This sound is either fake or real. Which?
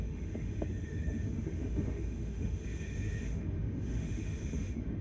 fake